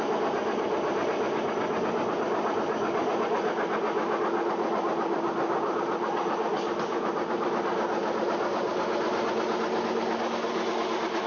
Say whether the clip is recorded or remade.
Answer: recorded